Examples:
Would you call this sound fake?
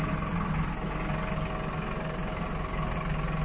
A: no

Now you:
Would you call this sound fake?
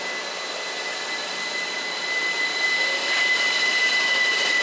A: no